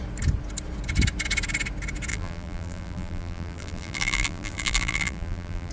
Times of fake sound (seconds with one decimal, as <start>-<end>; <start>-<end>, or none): 2.1-5.7